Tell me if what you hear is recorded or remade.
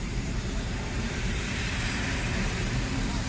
remade